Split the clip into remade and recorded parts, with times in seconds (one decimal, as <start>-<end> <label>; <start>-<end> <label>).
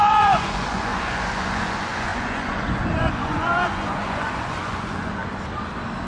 0.0-5.2 remade; 5.2-6.1 recorded